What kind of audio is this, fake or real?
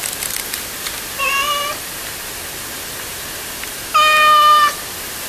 real